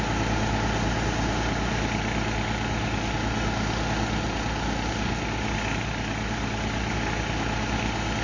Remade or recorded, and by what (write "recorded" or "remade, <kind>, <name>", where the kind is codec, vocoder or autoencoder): recorded